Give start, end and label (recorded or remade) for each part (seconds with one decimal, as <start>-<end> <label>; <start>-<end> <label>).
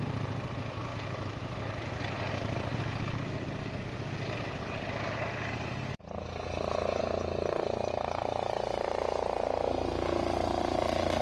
0.0-11.2 recorded